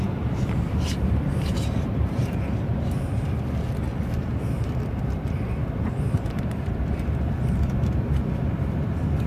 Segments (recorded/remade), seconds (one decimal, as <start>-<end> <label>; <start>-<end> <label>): 0.0-2.7 remade; 2.7-4.4 recorded; 4.4-9.3 remade

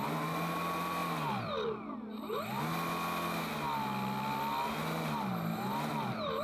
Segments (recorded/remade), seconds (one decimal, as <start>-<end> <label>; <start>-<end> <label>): 0.0-6.4 recorded

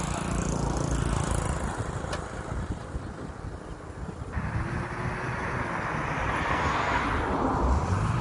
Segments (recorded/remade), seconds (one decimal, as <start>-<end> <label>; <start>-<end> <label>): 0.0-6.5 recorded; 6.5-7.0 remade; 7.0-8.2 recorded